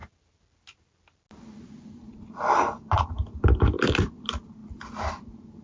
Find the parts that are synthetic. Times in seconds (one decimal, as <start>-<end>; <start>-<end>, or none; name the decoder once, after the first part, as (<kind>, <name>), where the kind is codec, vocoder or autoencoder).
none